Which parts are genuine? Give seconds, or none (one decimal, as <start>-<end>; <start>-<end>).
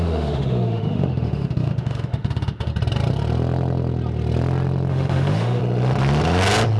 2.7-4.9; 5.6-6.8